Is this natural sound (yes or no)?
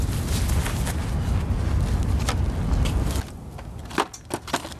yes